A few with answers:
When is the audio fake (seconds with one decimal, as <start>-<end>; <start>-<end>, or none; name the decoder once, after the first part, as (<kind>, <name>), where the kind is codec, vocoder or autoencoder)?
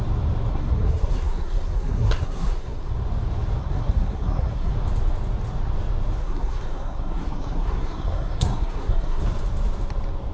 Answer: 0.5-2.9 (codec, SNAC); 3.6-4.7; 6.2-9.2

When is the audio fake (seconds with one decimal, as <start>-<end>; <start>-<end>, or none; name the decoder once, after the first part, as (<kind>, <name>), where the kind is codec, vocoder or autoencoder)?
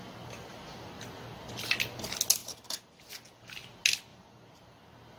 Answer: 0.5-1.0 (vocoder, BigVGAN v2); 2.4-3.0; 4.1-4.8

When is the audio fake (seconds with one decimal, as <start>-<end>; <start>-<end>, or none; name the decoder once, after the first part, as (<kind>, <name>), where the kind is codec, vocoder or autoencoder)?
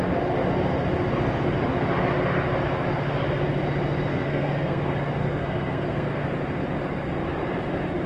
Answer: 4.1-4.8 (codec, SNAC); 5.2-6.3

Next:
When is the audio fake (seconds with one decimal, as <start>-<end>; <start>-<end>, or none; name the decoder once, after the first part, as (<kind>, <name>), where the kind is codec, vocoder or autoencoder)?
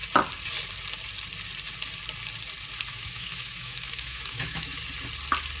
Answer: 2.9-4.8 (autoencoder, DAC-VAE)